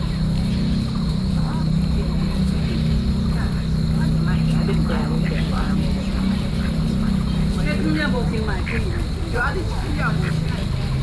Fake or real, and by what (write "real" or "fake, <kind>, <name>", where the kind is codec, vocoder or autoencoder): real